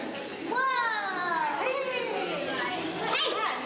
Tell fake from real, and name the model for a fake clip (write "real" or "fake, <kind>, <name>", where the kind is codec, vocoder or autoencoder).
real